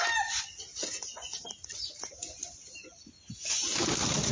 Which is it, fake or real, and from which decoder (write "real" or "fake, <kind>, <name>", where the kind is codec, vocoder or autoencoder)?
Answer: real